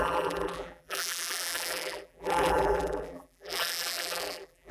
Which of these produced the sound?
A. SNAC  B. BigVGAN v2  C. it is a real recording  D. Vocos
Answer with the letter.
B